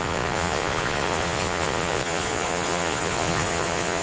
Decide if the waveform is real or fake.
fake